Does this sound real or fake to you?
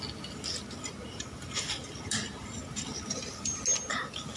real